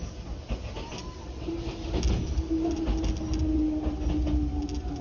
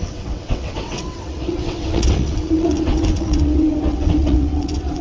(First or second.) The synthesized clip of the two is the second